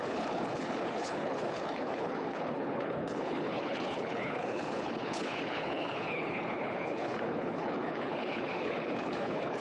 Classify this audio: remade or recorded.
remade